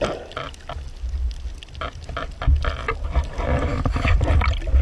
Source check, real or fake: real